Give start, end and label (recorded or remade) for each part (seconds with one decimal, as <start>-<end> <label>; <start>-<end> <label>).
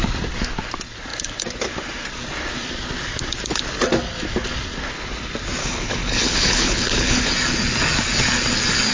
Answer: 0.0-5.6 recorded; 5.6-7.3 remade; 7.3-8.9 recorded